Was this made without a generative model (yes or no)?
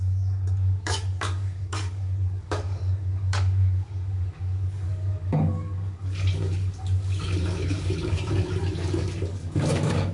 no